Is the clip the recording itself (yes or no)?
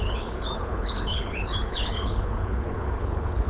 no